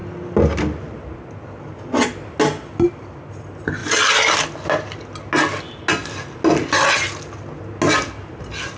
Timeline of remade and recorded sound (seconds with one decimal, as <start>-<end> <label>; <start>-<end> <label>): 0.0-3.8 recorded; 3.8-4.5 remade; 4.5-8.8 recorded